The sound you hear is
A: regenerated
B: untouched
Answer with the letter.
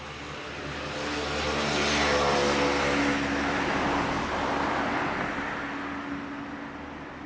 B